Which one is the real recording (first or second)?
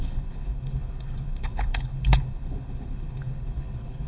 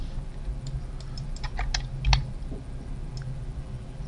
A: second